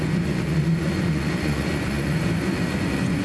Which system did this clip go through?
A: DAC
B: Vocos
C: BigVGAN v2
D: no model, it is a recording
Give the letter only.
B